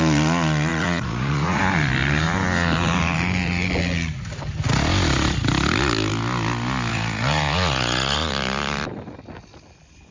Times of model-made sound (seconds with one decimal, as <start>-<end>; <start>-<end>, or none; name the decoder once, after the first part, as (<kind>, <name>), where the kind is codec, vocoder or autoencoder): 0.7-1.6 (vocoder, Vocos); 6.9-8.3